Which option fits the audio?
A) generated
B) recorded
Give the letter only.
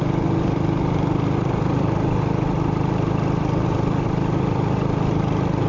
B